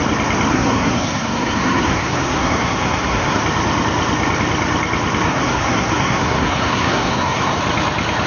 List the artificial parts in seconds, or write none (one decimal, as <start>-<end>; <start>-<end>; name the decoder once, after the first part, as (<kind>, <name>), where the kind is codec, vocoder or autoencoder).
0.5-3.4 (codec, SNAC); 5.3-7.6